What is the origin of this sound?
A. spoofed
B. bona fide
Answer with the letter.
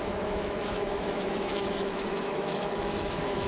A